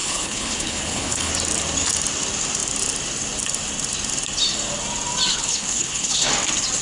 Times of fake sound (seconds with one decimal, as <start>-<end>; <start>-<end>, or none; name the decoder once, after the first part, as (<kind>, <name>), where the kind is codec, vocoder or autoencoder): 0.0-1.3 (codec, HILCodec); 5.3-6.3